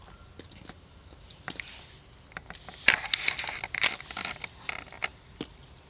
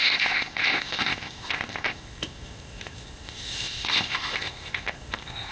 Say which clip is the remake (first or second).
second